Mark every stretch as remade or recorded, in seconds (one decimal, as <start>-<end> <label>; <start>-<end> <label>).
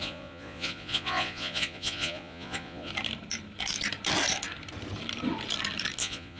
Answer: 0.0-2.9 remade; 2.9-6.0 recorded; 6.0-6.4 remade